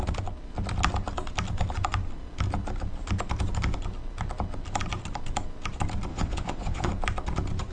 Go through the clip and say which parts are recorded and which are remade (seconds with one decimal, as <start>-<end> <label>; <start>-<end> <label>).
0.0-6.1 recorded; 6.1-6.9 remade; 6.9-7.7 recorded